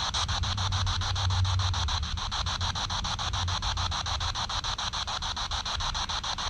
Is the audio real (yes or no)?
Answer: yes